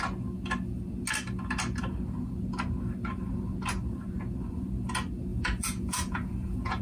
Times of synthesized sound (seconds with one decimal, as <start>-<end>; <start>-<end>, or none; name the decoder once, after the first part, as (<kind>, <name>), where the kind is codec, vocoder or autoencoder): 5.3-6.8 (vocoder, Vocos)

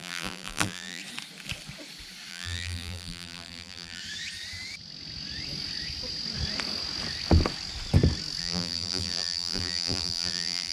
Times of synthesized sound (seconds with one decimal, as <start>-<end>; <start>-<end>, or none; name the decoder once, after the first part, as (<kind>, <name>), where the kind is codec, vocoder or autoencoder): 0.0-1.0 (vocoder, BigVGAN v2); 2.3-4.0; 8.4-10.7